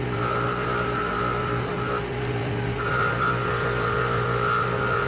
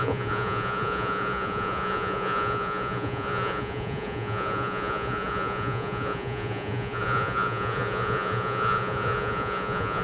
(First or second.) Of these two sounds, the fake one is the second